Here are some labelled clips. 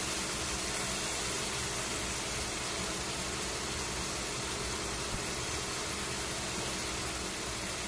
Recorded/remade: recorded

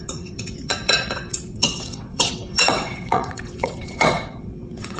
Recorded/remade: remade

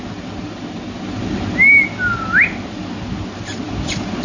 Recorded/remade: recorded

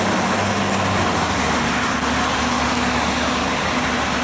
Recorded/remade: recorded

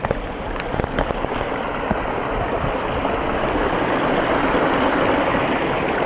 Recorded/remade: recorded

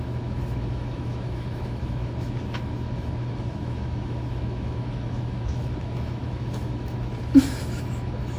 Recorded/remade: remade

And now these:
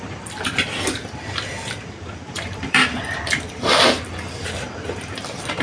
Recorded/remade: remade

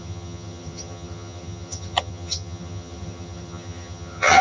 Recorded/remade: remade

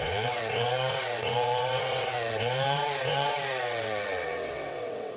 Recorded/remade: remade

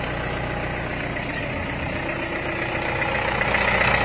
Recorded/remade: recorded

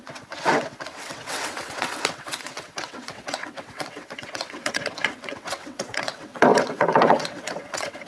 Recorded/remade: remade